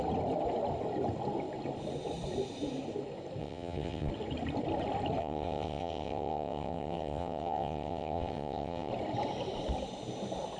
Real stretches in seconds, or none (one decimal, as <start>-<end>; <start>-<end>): 0.0-3.4; 4.1-5.2; 8.9-10.6